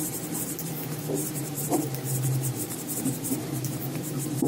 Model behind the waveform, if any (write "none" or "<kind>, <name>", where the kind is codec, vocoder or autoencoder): vocoder, BigVGAN v2